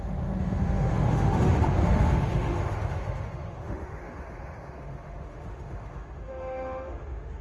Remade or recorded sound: remade